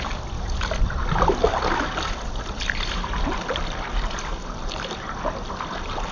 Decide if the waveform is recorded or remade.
recorded